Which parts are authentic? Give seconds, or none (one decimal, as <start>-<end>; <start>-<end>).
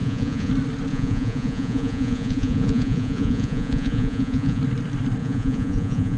0.5-0.9; 4.6-5.2